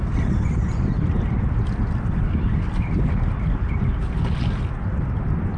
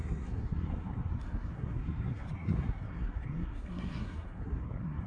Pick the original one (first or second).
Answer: first